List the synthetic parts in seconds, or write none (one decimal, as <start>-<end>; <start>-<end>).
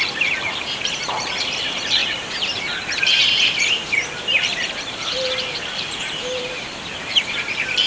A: 0.0-7.9